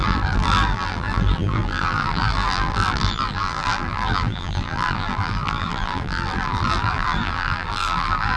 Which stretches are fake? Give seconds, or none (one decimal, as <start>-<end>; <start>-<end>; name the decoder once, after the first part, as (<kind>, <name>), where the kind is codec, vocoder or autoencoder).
0.0-8.4 (vocoder, BigVGAN v2)